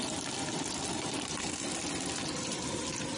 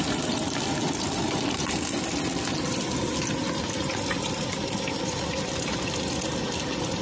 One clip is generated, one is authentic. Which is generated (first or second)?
first